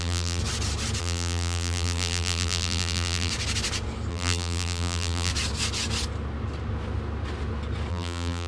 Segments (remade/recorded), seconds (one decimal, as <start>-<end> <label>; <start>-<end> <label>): 0.0-0.4 remade; 0.4-1.0 recorded; 1.0-3.3 remade; 3.3-4.1 recorded; 4.1-5.3 remade; 5.3-7.9 recorded; 7.9-8.5 remade